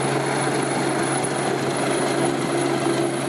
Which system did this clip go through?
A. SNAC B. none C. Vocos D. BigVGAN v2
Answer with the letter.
B